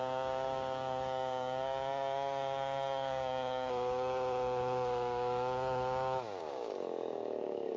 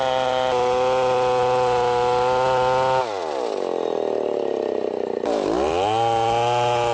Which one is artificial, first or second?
first